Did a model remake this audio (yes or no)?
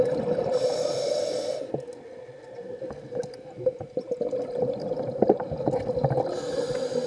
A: no